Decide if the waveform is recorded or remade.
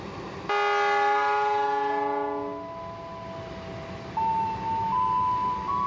recorded